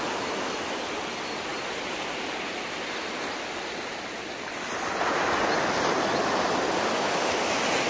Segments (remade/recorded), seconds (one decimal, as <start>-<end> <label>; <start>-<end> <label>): 0.0-7.9 recorded